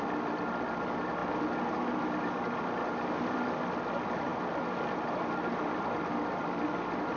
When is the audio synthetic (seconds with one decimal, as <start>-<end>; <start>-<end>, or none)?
none